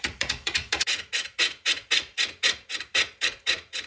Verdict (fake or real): fake